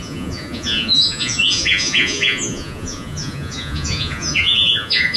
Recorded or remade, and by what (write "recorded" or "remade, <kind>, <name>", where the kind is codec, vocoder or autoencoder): remade, vocoder, Vocos